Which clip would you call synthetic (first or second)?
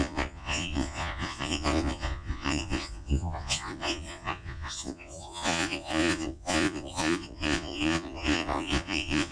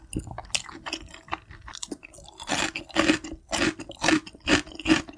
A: first